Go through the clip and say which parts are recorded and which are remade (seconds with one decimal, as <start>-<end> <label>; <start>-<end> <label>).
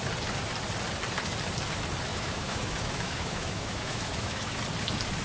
0.0-2.1 recorded; 2.1-4.6 remade; 4.6-5.2 recorded